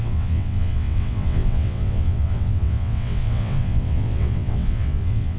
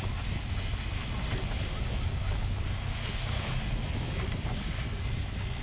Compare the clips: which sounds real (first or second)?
second